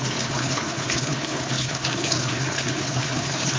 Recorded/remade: remade